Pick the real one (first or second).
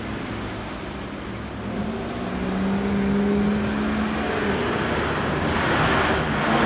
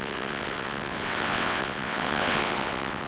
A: first